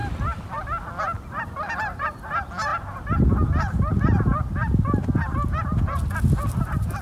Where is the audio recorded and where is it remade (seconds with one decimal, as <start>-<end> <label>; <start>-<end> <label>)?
0.0-7.0 recorded